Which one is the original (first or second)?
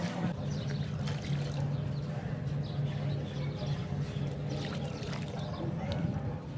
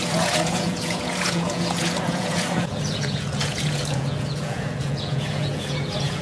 first